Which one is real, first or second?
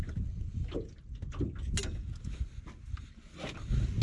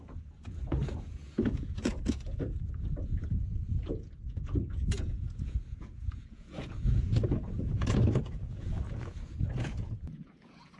first